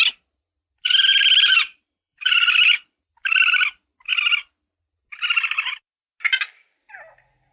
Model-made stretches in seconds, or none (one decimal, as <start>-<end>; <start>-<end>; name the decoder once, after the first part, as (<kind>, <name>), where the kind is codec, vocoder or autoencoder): 1.1-3.0 (vocoder, BigVGAN v2)